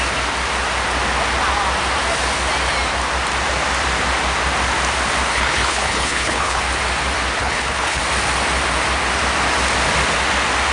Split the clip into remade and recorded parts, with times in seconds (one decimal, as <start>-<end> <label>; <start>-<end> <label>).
0.0-5.3 recorded; 5.3-6.6 remade; 6.6-7.4 recorded; 7.4-8.0 remade; 8.0-10.7 recorded